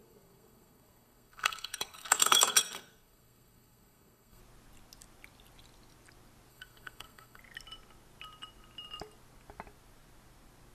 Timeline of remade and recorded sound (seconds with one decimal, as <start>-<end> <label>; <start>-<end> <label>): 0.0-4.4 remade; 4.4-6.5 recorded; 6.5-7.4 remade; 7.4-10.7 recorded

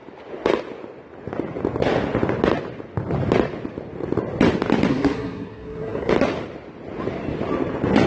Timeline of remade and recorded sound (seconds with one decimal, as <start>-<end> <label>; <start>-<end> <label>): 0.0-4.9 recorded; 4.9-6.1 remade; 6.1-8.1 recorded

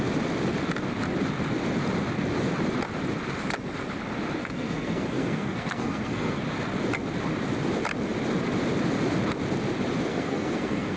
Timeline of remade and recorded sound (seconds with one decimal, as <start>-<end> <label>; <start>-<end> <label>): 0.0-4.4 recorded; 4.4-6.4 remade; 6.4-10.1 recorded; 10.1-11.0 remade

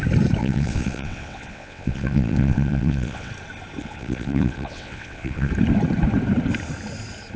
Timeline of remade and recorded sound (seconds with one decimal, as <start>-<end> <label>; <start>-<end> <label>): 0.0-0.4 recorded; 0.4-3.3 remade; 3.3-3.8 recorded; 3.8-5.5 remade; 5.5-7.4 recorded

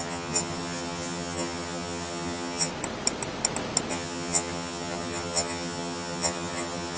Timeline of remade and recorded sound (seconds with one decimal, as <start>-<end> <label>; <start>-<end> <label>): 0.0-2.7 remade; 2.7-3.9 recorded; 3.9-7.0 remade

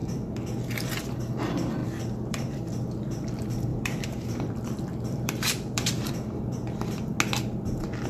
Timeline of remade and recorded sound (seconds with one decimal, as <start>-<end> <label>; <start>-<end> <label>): 0.0-1.8 recorded; 1.8-2.7 remade; 2.7-3.7 recorded; 3.7-6.1 remade; 6.1-8.1 recorded

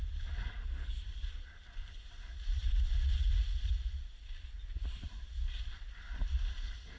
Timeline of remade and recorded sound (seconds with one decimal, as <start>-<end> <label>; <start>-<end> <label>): 0.0-7.0 recorded